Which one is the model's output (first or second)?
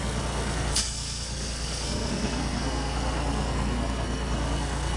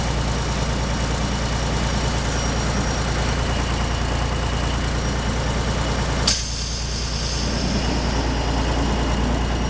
first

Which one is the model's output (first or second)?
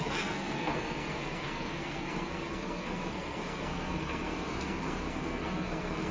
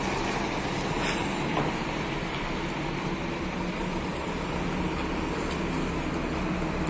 first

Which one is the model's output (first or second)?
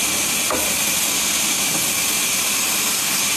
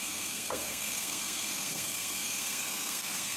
second